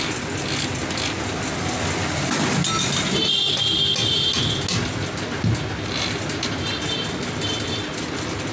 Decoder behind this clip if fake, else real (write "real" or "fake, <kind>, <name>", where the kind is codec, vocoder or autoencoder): real